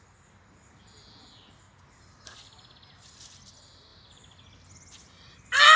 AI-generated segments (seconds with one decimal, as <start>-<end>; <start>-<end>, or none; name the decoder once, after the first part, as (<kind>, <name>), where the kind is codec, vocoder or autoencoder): none